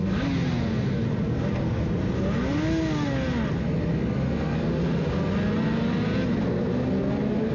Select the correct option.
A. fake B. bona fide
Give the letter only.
B